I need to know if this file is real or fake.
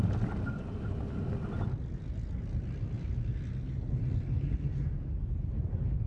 real